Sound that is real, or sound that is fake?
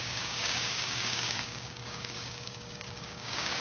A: fake